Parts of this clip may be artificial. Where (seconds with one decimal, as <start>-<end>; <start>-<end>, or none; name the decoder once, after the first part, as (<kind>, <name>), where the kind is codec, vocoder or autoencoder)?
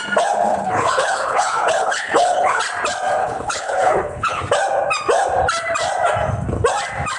0.5-2.6 (codec, HILCodec); 3.2-4.4